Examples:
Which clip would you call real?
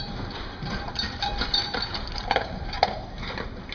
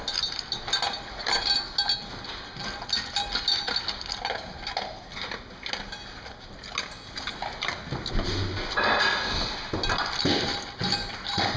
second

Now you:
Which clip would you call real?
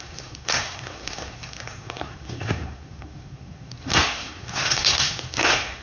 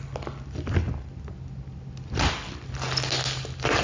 second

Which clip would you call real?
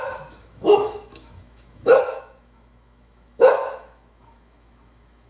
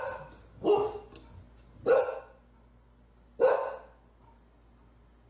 second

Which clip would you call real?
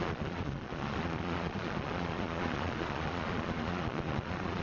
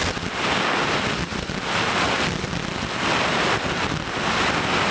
second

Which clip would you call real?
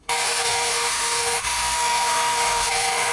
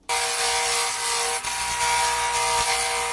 second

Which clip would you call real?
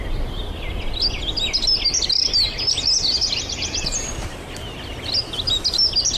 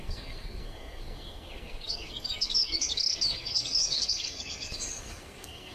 first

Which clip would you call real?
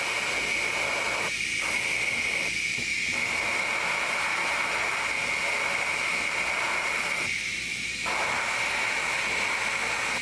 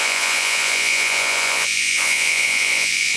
first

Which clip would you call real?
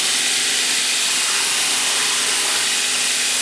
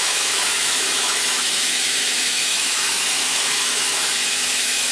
first